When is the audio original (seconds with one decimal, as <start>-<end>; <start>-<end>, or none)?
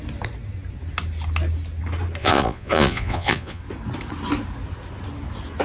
0.0-2.2; 3.6-5.6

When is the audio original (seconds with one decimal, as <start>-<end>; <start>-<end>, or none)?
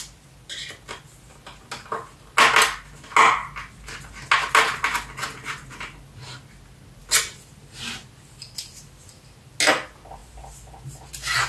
0.0-11.5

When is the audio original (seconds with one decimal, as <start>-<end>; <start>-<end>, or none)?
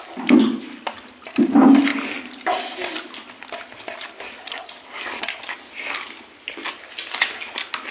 0.0-7.9